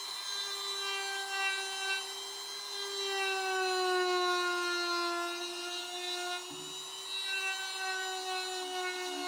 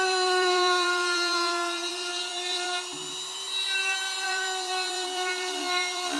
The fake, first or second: second